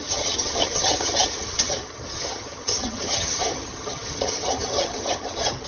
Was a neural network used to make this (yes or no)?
yes